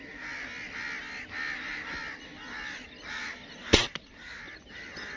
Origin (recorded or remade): recorded